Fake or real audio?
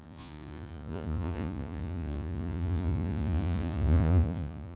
fake